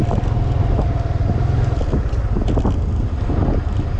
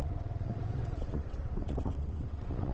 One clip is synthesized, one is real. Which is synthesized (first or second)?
second